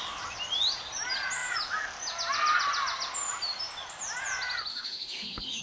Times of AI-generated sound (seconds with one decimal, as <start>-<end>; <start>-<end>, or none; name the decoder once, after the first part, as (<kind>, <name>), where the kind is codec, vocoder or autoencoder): 4.7-5.6 (autoencoder, DAC-VAE)